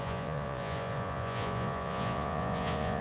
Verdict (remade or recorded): remade